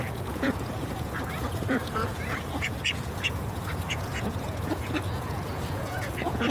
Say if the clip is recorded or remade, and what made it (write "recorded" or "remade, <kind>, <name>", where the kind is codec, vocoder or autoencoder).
remade, vocoder, Vocos